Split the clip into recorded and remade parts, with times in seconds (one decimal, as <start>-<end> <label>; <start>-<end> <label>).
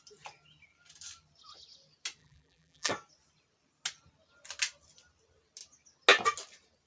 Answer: 0.0-2.2 recorded; 2.2-2.9 remade; 2.9-6.9 recorded